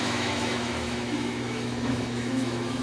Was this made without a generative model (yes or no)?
no